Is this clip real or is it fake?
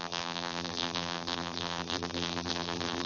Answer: fake